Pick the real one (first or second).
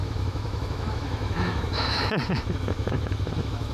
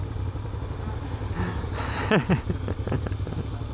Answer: second